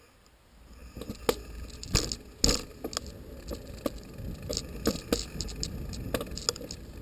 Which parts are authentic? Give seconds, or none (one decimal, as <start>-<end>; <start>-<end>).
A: 0.0-7.0